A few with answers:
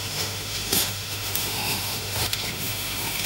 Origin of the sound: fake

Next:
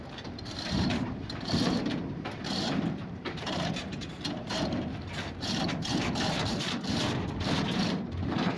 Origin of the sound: fake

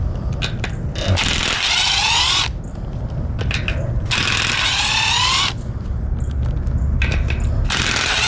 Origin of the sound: real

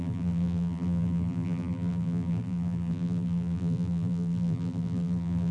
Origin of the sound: fake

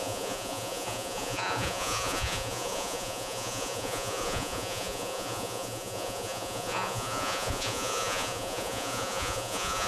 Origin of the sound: fake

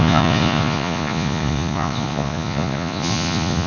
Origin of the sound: fake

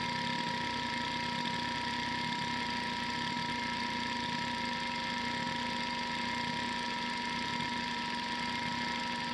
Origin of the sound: real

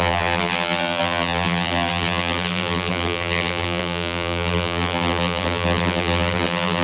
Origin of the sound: fake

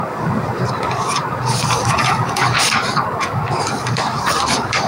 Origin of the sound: fake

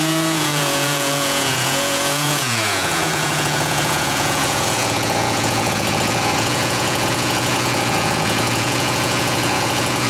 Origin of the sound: fake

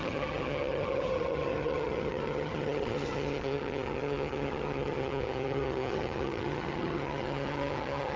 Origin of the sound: fake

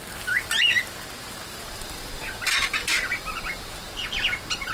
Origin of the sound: real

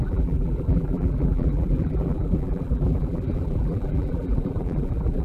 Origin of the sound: fake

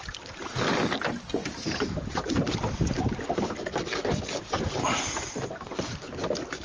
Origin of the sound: real